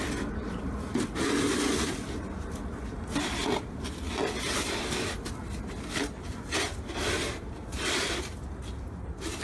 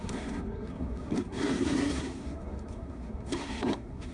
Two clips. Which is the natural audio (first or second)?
first